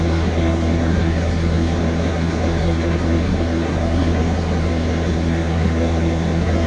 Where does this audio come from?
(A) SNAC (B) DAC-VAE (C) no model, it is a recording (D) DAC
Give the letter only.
A